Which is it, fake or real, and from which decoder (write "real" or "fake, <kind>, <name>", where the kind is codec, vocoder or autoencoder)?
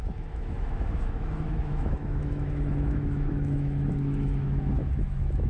fake, autoencoder, DAC-VAE